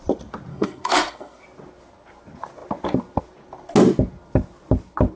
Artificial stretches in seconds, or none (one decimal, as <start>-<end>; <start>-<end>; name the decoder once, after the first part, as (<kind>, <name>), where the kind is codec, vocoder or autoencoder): 0.5-1.4 (codec, SNAC)